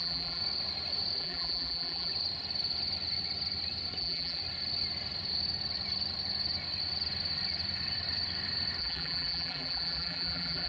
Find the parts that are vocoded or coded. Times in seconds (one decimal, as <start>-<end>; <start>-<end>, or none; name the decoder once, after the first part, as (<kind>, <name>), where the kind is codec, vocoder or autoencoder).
0.0-0.4 (vocoder, BigVGAN v2); 1.2-2.1; 4.0-4.4; 8.8-10.7